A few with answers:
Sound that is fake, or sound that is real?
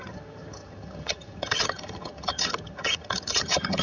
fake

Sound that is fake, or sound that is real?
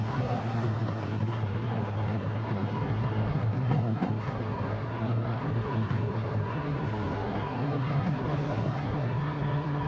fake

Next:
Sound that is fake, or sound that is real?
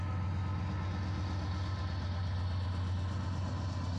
real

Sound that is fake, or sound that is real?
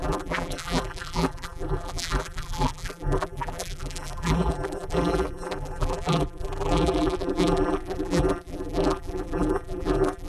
fake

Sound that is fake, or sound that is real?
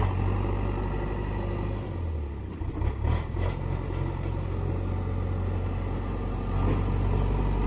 real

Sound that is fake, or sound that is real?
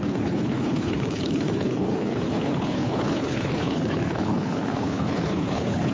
fake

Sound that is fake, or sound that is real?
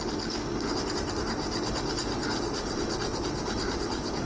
real